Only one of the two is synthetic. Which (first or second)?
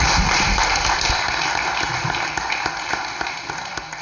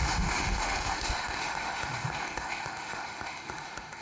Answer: second